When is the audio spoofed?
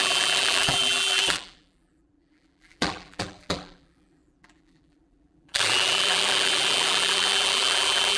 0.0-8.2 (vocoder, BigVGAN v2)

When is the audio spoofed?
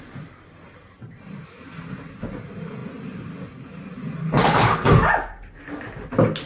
4.2-4.9 (codec, HILCodec)